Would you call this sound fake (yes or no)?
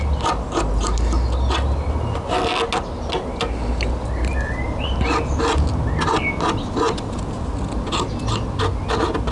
no